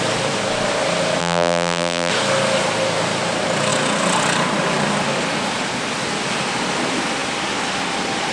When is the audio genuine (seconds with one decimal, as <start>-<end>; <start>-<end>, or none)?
0.0-1.2; 2.1-8.3